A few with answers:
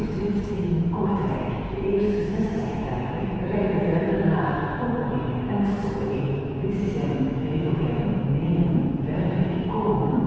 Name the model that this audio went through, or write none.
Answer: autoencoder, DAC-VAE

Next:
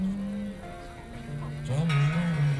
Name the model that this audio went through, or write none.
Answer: none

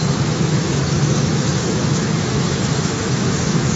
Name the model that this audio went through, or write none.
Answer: autoencoder, DAC-VAE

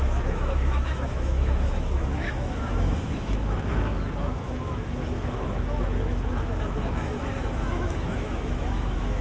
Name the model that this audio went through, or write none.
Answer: autoencoder, DAC-VAE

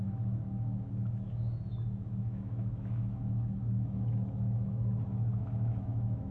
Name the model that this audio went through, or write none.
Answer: autoencoder, DAC-VAE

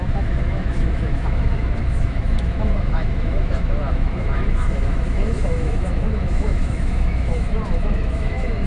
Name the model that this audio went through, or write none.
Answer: autoencoder, DAC-VAE